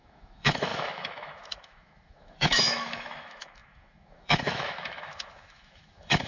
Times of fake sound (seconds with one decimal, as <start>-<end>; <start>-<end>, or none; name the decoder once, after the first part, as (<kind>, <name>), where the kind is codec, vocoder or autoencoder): 0.0-6.3 (autoencoder, DAC-VAE)